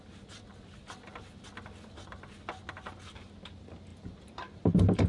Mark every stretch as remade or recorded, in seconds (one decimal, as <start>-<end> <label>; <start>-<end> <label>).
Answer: 0.0-3.9 recorded; 3.9-5.1 remade